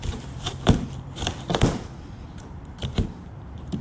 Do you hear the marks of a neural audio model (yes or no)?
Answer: yes